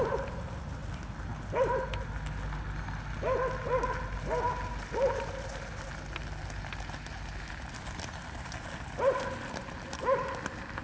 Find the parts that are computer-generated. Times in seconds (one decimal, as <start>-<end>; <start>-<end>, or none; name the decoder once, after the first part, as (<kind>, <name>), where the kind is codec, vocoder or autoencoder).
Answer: none

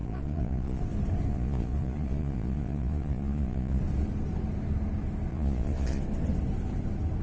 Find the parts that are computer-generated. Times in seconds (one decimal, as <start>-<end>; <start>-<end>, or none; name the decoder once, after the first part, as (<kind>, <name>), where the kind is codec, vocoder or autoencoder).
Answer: 0.0-0.8 (vocoder, Vocos); 1.3-3.8; 5.3-6.0

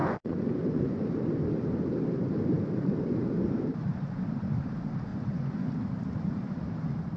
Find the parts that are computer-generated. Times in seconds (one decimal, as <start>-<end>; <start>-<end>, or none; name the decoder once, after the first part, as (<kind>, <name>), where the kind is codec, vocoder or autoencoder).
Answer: 0.0-1.0 (vocoder, Vocos); 5.1-5.7

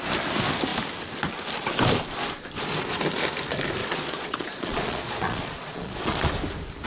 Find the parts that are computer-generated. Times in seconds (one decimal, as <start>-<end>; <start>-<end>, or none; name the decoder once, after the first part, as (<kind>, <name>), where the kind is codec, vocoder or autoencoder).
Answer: 3.8-6.3 (vocoder, Vocos)